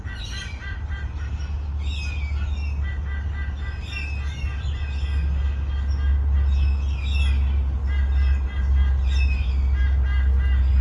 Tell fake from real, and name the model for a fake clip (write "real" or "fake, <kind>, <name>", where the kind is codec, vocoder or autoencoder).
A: real